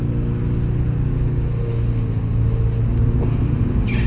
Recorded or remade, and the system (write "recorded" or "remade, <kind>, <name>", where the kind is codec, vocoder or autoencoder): recorded